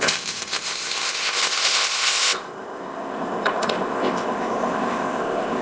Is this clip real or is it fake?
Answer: fake